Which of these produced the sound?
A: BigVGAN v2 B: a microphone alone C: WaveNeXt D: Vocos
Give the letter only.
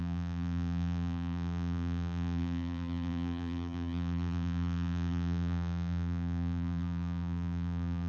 A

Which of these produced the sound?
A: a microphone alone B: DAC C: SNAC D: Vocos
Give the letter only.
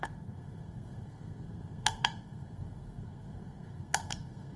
C